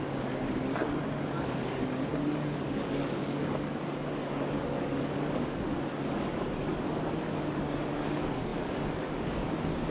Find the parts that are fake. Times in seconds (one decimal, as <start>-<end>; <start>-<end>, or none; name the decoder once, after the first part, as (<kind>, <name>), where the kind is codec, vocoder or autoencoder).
0.0-6.7 (codec, DAC); 7.4-9.9